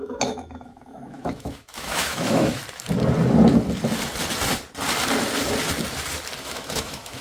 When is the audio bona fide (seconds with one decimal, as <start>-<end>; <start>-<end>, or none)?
2.6-6.4